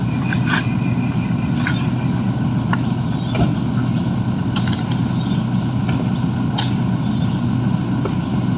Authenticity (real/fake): real